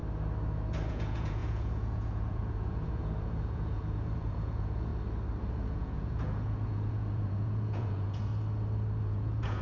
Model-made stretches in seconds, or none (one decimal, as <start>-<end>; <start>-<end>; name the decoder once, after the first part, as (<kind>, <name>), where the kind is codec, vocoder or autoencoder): 0.9-4.9 (vocoder, Vocos); 5.4-8.3; 9.0-9.6